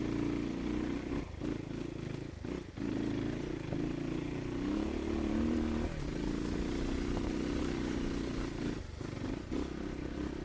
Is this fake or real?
real